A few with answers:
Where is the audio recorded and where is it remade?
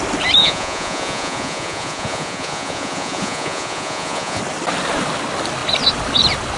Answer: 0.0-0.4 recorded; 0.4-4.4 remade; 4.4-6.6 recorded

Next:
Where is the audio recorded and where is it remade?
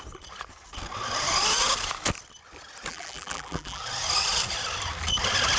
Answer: 0.0-2.9 recorded; 2.9-3.8 remade; 3.8-5.6 recorded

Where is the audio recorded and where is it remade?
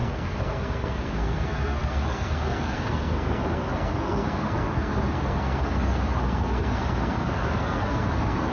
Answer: 0.0-8.5 remade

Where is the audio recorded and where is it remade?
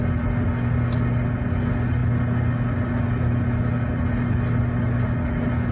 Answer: 0.0-5.7 recorded